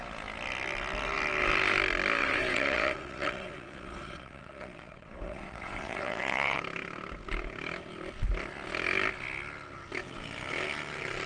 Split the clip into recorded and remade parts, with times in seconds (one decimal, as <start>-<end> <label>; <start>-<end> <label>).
0.0-2.2 recorded; 2.2-6.6 remade; 6.6-11.3 recorded